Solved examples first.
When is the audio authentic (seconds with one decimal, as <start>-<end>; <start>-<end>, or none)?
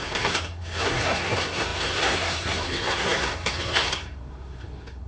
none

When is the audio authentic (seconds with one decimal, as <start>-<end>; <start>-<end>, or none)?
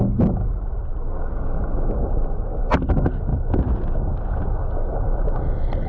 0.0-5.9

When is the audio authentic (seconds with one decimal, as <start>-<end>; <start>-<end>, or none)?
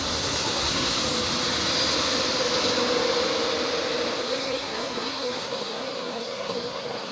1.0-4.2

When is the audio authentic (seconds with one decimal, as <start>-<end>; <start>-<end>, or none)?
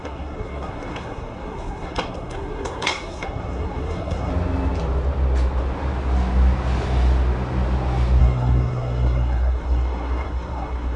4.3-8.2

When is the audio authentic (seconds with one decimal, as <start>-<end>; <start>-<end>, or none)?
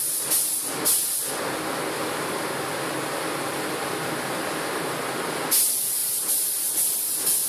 0.0-7.5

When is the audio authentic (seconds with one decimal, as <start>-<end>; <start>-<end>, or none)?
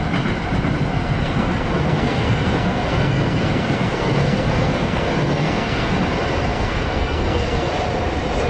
0.0-1.0; 6.0-6.4; 7.7-8.5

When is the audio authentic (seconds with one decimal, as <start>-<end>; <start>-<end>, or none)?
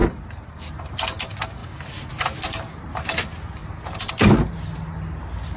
0.0-5.6